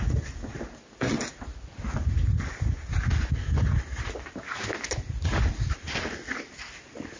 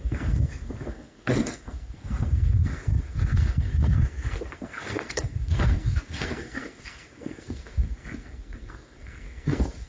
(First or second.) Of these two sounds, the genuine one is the first